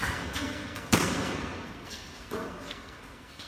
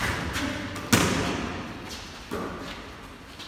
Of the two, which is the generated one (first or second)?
first